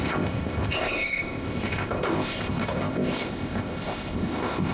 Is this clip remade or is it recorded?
remade